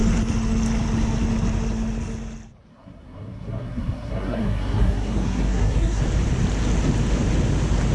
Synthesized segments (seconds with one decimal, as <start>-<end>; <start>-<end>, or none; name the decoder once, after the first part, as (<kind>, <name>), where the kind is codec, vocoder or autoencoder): 2.7-6.0 (codec, SNAC)